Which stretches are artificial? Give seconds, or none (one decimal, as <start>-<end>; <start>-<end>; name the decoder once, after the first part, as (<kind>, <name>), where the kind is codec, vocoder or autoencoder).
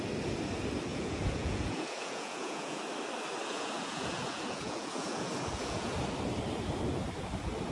0.9-2.8 (vocoder, Vocos); 3.5-5.9